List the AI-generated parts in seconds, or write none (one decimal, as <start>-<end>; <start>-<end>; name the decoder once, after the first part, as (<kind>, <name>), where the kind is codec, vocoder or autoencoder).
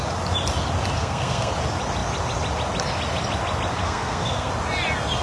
1.0-1.5 (codec, SNAC); 3.8-4.5